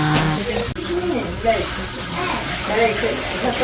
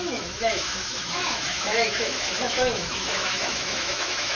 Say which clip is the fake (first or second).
second